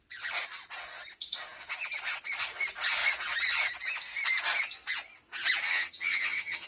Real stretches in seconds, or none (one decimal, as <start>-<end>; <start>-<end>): 0.0-5.7